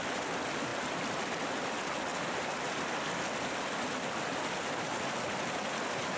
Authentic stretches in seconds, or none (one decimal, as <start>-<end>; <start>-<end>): 0.0-6.2